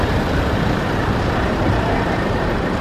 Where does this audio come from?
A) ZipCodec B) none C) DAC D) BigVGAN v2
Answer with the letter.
D